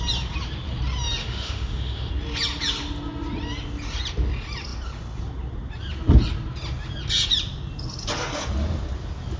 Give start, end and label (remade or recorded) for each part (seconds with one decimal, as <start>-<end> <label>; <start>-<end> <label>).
0.0-1.2 recorded; 1.2-2.1 remade; 2.1-9.4 recorded